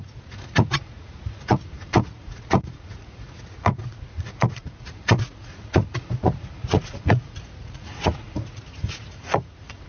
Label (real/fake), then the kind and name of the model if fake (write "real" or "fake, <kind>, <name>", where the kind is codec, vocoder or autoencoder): fake, vocoder, Vocos